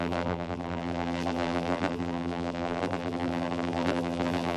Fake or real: fake